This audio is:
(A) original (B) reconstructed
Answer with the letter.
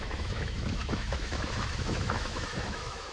B